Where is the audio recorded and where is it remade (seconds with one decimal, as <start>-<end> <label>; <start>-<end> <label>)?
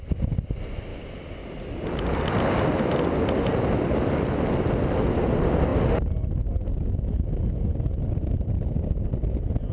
0.0-3.5 recorded; 3.5-5.2 remade; 5.2-9.7 recorded